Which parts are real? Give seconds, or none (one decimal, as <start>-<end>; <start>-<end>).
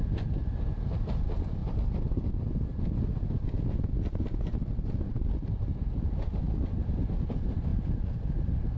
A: 0.0-8.8